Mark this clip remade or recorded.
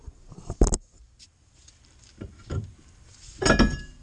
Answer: recorded